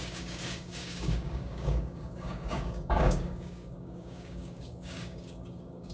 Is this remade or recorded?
remade